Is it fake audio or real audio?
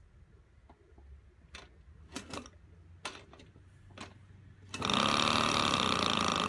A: real